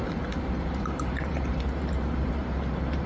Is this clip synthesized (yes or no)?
yes